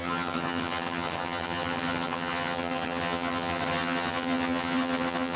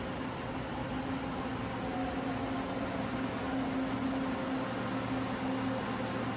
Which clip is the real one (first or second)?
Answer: second